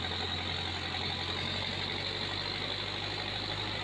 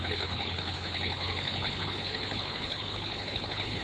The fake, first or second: second